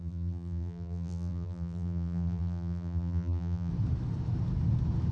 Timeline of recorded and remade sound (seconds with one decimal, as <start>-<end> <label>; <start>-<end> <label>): 0.0-3.7 remade; 3.7-5.1 recorded